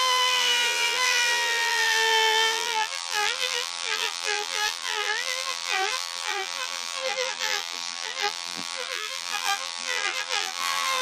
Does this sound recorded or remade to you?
remade